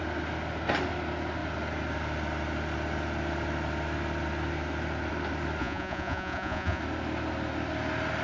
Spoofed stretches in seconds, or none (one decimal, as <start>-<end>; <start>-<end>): 5.6-6.8